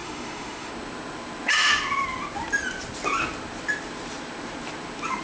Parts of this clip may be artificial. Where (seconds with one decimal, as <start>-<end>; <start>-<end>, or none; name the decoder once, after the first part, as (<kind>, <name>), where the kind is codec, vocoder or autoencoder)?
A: 0.0-0.7 (autoencoder, DAC-VAE)